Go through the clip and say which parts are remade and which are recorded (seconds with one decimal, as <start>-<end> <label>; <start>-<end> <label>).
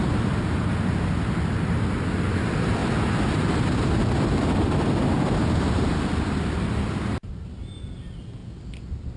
0.0-2.8 recorded; 2.8-5.3 remade; 5.3-9.2 recorded